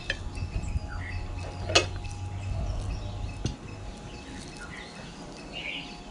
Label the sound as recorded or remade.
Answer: recorded